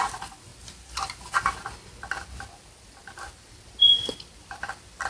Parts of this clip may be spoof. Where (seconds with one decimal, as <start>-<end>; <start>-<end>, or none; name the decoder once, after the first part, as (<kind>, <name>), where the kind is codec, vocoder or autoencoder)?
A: none